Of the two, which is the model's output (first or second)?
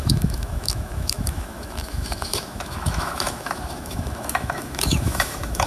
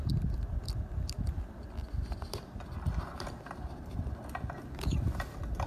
first